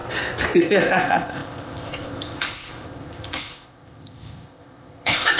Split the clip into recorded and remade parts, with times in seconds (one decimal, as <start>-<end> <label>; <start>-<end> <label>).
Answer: 0.0-0.6 recorded; 0.6-5.4 remade